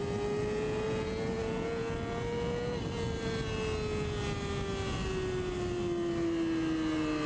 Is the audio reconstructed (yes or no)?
no